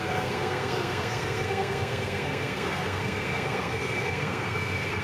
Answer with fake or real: fake